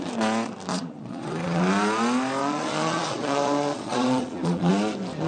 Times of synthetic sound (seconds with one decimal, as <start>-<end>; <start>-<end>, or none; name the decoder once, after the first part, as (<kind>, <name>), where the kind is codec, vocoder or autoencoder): 0.7-1.6 (vocoder, Vocos); 2.4-4.7